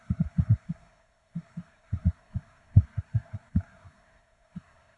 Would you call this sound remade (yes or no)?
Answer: yes